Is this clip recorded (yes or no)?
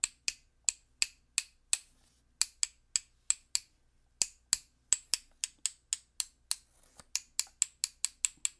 yes